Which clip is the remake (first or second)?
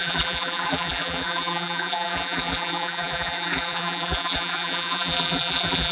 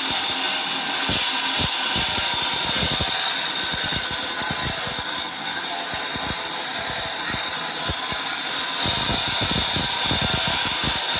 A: first